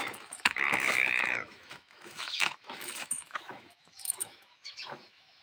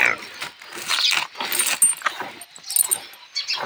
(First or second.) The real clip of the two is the second